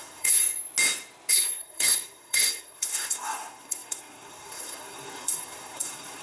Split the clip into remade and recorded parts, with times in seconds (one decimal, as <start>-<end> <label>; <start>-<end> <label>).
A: 0.0-0.4 remade; 0.4-1.3 recorded; 1.3-6.2 remade